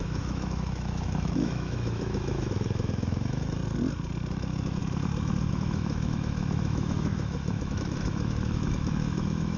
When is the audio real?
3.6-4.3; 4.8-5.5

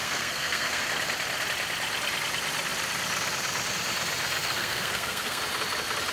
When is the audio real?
0.8-4.4; 5.4-6.1

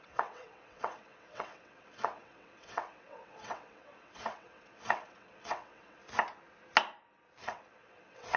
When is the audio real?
6.0-7.4

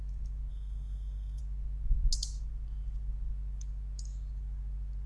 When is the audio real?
0.0-0.5; 1.4-5.1

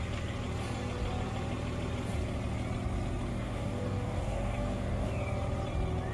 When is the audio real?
0.0-3.3; 5.1-6.1

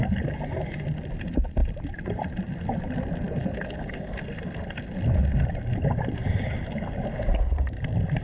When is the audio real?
0.0-8.2